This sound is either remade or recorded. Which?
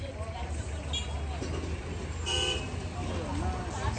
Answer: recorded